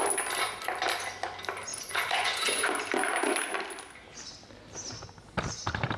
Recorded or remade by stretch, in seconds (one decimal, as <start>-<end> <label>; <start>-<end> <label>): 0.0-1.7 recorded; 1.7-2.7 remade; 2.7-6.0 recorded